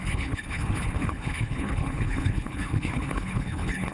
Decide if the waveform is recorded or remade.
remade